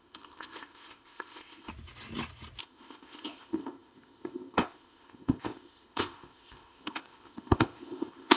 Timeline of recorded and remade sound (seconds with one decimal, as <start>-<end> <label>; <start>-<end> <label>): 0.0-1.7 remade; 1.7-2.6 recorded; 2.6-8.4 remade